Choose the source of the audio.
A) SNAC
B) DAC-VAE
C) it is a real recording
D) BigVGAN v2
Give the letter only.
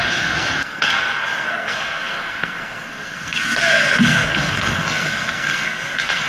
A